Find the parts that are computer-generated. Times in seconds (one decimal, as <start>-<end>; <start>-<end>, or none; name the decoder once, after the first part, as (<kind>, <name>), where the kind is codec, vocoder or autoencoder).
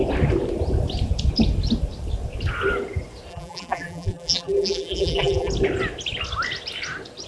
3.3-5.5 (vocoder, BigVGAN v2)